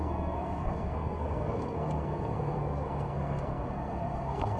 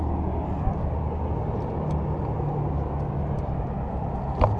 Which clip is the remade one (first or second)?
first